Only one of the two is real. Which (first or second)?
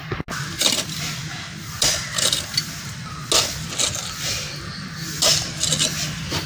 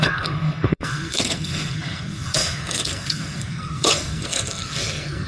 first